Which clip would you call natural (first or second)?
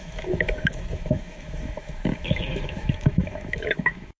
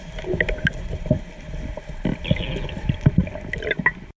second